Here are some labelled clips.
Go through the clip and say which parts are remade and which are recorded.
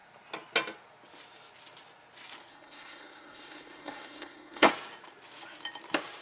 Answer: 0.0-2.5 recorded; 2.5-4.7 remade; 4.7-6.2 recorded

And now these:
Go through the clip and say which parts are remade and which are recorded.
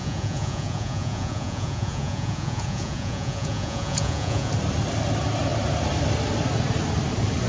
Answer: 0.0-4.5 remade; 4.5-7.5 recorded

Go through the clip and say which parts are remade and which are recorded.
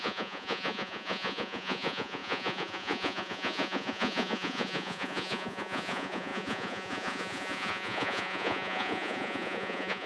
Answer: 0.0-10.1 remade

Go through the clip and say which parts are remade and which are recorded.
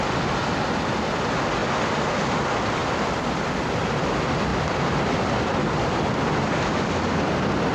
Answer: 0.0-7.7 recorded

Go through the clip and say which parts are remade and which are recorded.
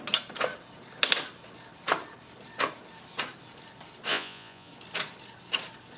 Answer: 0.0-4.1 recorded; 4.1-4.7 remade; 4.7-6.0 recorded